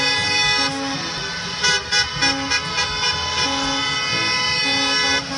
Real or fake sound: real